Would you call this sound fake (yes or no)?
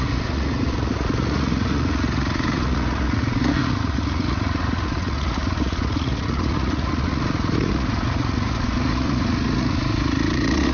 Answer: yes